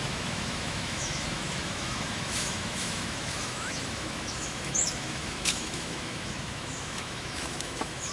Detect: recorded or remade remade